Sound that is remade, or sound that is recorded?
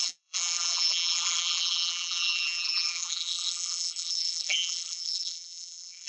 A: remade